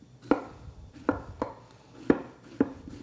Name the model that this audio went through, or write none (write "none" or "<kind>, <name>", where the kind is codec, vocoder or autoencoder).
none